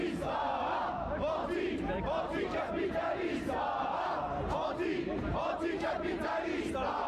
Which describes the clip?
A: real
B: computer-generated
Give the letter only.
B